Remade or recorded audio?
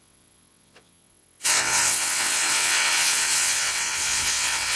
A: remade